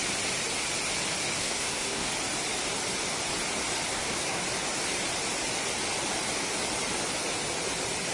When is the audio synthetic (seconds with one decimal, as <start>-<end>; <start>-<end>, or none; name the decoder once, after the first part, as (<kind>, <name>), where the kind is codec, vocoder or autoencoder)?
1.4-2.1 (codec, SNAC); 3.9-4.4